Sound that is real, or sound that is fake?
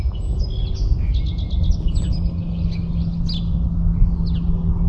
real